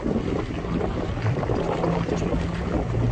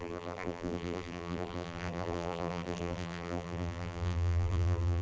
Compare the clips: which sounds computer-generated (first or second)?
second